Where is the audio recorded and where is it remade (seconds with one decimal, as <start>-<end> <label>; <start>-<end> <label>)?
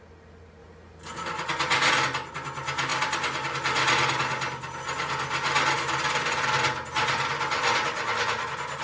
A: 0.0-8.8 recorded